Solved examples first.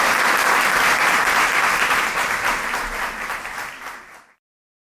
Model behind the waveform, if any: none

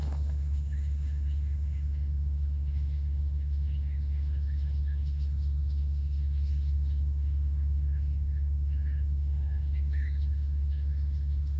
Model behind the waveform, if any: autoencoder, DAC-VAE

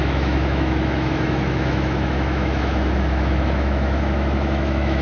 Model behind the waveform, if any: autoencoder, DAC-VAE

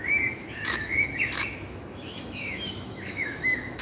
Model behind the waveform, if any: autoencoder, DAC-VAE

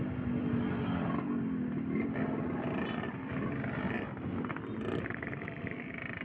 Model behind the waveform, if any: none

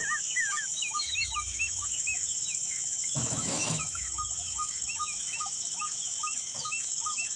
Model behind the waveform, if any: autoencoder, DAC-VAE